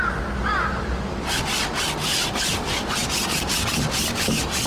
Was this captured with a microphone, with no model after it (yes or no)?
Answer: yes